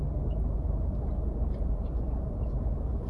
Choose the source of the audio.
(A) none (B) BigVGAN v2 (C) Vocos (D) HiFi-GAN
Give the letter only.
B